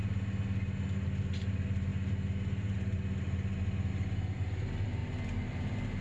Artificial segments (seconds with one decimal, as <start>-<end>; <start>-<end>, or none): none